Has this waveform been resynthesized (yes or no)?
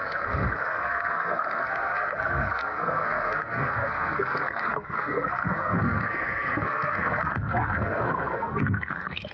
yes